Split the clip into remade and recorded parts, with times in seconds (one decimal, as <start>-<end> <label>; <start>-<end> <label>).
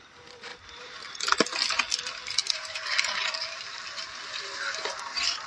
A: 0.0-0.5 recorded; 0.5-1.0 remade; 1.0-2.4 recorded; 2.4-4.9 remade; 4.9-5.5 recorded